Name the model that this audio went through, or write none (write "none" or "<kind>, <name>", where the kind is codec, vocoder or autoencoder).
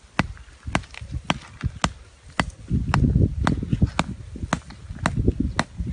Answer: none